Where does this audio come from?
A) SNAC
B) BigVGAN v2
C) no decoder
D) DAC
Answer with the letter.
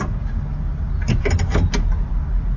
C